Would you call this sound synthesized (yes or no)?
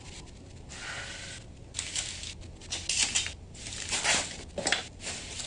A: no